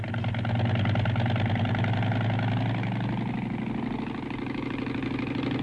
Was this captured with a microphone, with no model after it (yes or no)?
yes